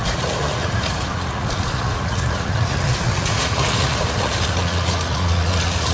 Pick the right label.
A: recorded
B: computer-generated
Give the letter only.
B